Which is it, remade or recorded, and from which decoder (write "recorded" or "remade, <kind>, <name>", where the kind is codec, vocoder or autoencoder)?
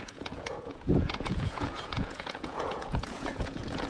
remade, vocoder, Vocos